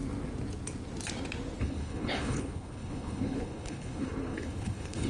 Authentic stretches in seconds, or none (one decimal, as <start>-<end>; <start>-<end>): 0.0-1.6